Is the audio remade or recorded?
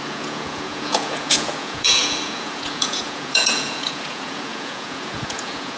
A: remade